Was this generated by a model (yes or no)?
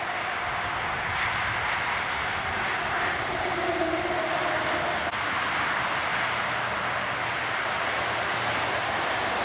no